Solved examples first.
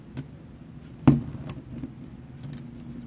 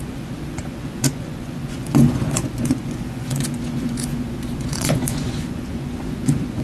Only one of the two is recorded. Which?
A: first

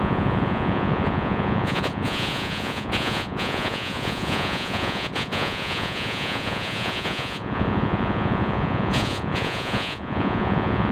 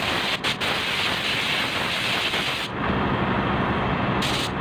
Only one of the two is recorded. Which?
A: second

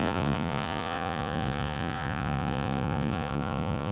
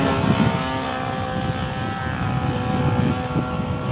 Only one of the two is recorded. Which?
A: second